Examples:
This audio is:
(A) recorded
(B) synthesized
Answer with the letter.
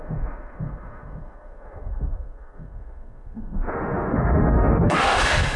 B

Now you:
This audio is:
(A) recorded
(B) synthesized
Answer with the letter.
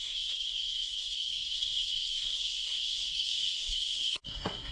B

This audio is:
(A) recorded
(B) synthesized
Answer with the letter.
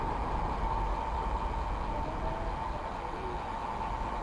A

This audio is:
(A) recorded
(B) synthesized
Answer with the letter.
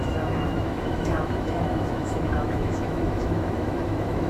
B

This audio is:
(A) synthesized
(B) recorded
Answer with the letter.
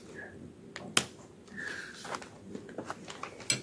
B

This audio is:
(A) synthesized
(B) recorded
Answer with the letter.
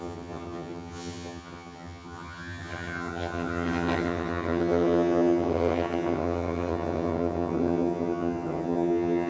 A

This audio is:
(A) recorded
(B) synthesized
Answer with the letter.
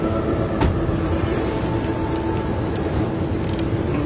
A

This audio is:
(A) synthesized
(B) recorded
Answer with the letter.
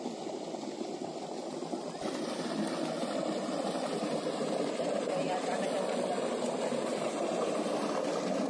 B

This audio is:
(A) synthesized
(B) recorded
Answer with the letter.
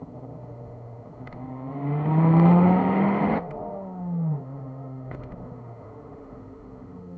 A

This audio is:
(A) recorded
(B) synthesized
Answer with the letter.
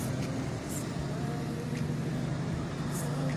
A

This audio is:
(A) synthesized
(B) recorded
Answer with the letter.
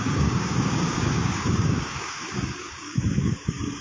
A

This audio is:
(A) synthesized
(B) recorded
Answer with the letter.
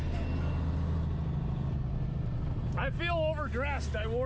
B